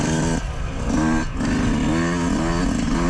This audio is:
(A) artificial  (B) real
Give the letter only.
B